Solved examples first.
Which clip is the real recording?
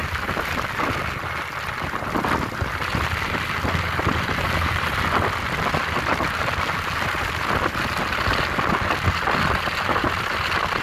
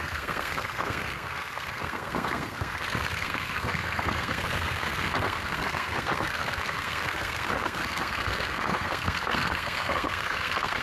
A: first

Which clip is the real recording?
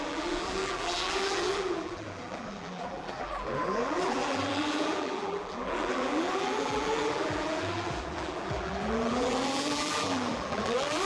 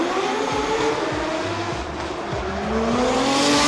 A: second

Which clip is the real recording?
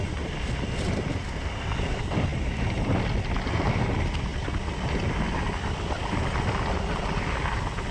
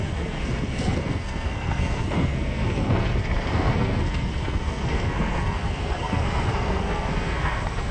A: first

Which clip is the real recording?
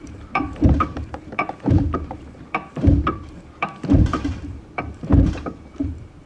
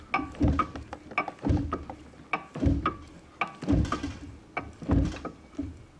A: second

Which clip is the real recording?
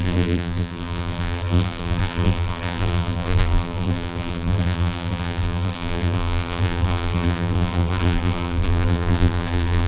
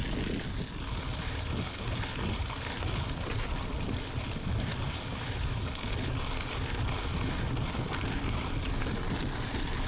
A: second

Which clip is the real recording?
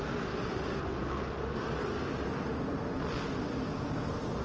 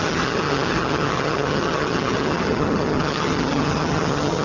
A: first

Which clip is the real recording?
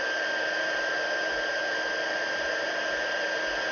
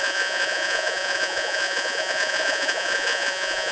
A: first